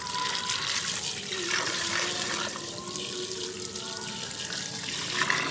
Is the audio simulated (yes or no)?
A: no